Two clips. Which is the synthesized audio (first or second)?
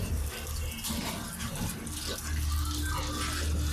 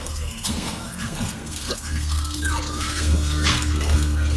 second